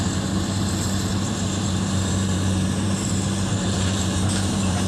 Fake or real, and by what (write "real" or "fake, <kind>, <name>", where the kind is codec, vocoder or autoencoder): fake, vocoder, BigVGAN v2